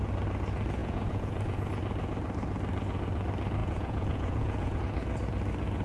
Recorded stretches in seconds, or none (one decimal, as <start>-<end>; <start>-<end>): 0.0-0.8; 1.7-3.6; 4.8-5.8